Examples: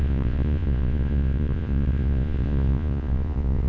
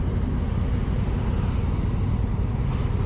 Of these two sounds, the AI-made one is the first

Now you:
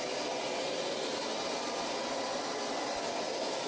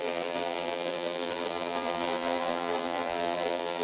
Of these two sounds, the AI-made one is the second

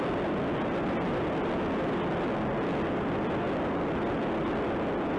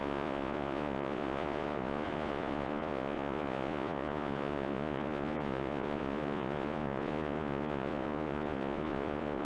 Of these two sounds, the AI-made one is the second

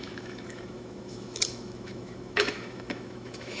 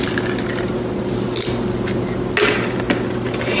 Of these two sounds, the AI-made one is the first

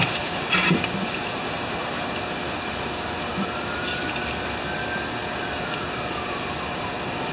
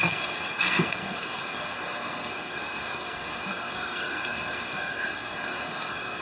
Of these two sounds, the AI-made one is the second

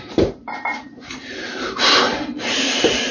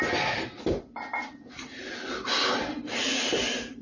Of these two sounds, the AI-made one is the first